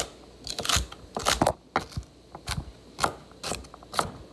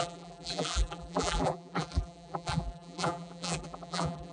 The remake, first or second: second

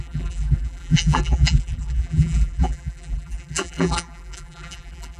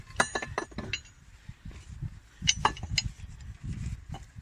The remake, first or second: first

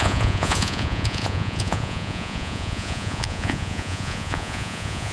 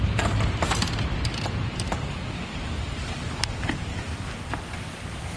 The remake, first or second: first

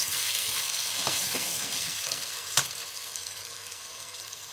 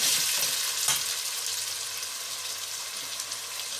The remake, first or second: first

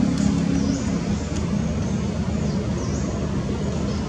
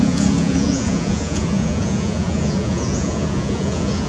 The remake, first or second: second